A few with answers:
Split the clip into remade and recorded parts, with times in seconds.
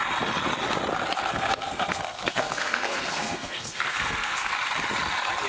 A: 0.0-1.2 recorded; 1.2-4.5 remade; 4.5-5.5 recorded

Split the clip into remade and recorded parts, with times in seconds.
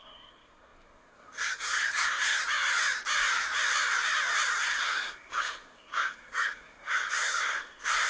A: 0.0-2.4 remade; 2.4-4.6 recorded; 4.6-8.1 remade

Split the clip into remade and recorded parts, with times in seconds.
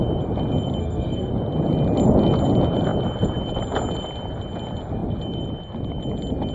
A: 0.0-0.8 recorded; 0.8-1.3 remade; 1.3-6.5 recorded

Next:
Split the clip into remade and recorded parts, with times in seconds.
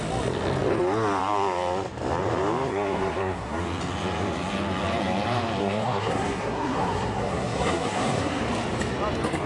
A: 0.0-2.7 recorded; 2.7-3.6 remade; 3.6-5.6 recorded; 5.6-8.4 remade; 8.4-9.5 recorded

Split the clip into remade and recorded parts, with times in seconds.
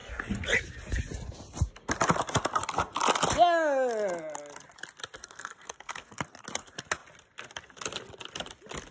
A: 0.0-5.2 recorded; 5.2-6.2 remade; 6.2-8.9 recorded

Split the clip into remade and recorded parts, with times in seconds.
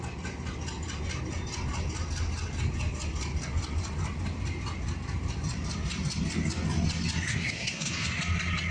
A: 0.0-7.3 recorded; 7.3-8.2 remade; 8.2-8.7 recorded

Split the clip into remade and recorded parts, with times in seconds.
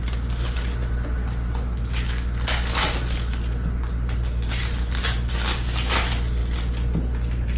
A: 0.0-7.6 recorded